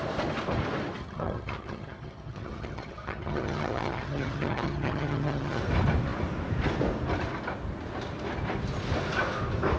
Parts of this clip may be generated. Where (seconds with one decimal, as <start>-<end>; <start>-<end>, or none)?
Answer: 1.0-5.6